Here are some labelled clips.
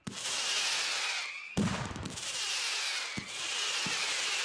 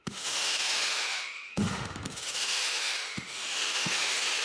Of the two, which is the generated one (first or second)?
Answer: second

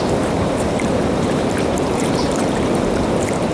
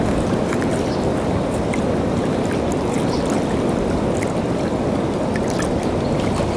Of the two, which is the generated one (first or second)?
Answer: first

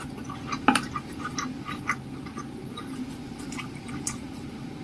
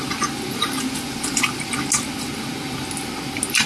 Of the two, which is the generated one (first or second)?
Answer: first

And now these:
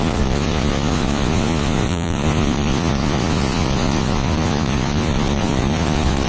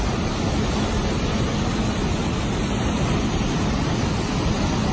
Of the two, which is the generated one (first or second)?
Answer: first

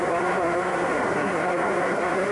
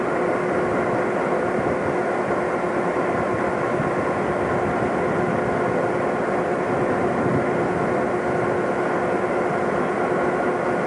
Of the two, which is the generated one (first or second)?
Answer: first